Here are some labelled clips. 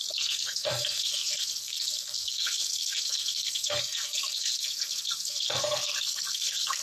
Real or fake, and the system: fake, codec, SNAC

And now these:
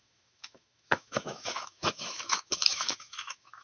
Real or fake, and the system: fake, autoencoder, DAC-VAE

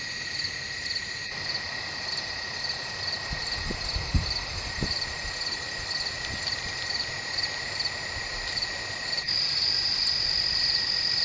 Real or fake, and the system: real